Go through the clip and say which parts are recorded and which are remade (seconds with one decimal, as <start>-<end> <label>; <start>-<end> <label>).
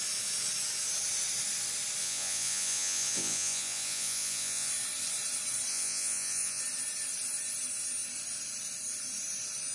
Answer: 0.0-2.0 recorded; 2.0-4.7 remade; 4.7-5.7 recorded; 5.7-6.6 remade; 6.6-9.7 recorded